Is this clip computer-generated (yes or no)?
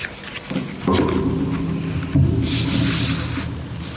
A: no